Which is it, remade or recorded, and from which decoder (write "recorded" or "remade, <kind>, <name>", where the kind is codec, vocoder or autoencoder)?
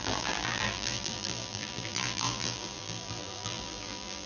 remade, vocoder, BigVGAN v2